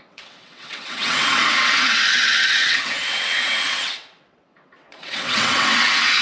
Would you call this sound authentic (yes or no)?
no